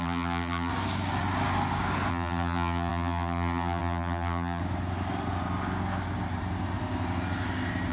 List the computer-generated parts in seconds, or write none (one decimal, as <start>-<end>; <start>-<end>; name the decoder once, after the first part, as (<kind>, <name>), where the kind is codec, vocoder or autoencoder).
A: 0.0-0.7 (vocoder, BigVGAN v2); 2.1-4.6